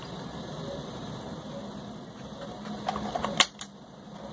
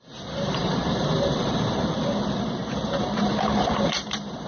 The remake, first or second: second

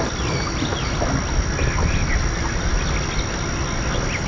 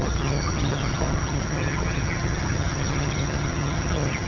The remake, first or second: second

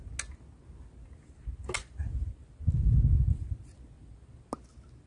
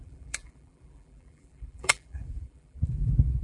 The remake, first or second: second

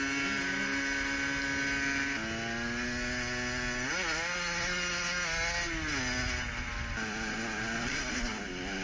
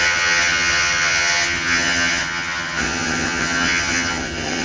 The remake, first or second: second